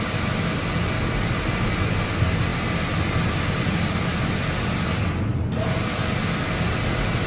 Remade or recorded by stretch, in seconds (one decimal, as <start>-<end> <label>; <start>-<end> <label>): 0.0-7.3 recorded